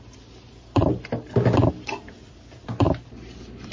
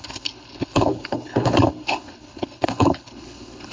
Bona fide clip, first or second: first